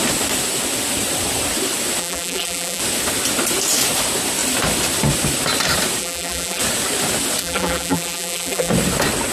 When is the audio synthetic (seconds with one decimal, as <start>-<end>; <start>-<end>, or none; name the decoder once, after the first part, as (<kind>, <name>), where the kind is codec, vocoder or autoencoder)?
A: 2.0-2.8 (vocoder, BigVGAN v2); 6.0-6.6; 7.4-8.7